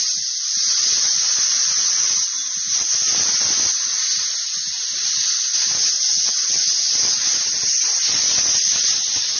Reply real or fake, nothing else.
real